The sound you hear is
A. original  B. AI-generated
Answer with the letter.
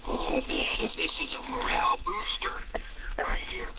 B